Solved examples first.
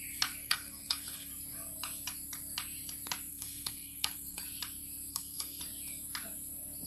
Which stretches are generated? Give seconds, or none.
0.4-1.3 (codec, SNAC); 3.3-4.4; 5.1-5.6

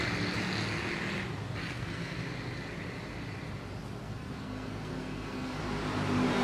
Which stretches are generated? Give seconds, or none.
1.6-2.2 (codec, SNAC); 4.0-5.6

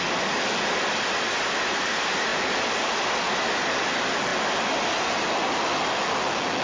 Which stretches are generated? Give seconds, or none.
none

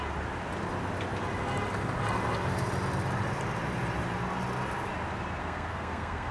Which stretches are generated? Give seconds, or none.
5.4-6.3 (codec, SNAC)

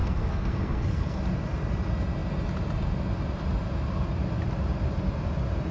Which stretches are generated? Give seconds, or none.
0.0-1.2 (codec, SNAC)

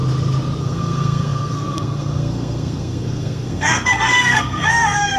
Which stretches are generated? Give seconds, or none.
0.6-5.2 (codec, SNAC)

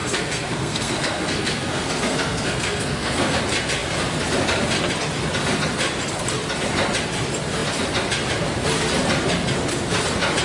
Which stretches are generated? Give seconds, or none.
0.0-3.4 (codec, SNAC)